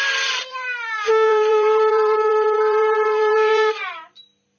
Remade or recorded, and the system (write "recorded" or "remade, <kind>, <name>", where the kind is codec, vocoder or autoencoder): remade, vocoder, BigVGAN v2